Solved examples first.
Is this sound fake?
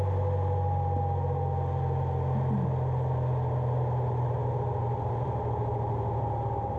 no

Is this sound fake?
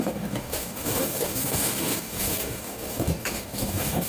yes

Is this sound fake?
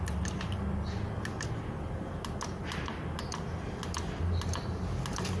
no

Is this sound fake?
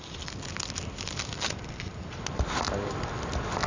no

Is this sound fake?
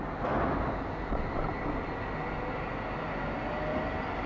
no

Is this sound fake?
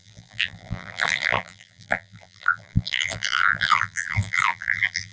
yes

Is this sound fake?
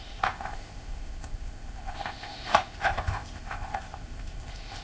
yes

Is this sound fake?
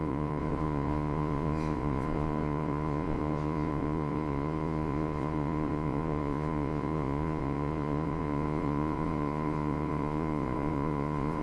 yes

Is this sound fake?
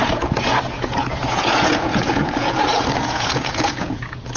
yes